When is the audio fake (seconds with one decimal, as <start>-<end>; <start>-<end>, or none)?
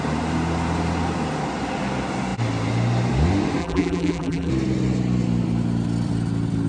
3.6-4.5